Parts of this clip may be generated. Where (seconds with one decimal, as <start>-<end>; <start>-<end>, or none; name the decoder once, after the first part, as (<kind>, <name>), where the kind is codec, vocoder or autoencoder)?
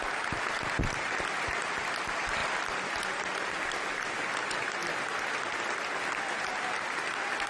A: 0.0-4.8 (vocoder, BigVGAN v2); 5.9-7.5